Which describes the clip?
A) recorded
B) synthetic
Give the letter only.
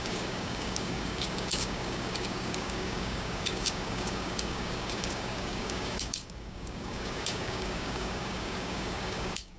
B